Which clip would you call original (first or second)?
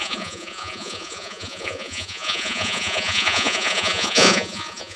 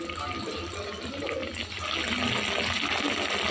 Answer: second